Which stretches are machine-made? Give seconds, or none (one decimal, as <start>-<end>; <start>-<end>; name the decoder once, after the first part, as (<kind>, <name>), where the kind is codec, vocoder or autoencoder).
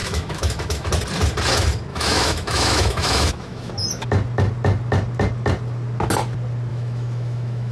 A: 0.0-0.9 (autoencoder, DAC-VAE); 1.9-3.7; 6.7-7.7